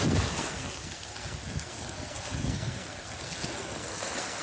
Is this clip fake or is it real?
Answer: fake